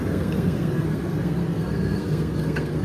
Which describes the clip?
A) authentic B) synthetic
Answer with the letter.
B